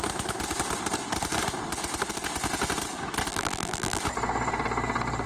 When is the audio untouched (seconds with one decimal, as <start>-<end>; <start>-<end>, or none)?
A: 0.0-3.3; 4.0-5.3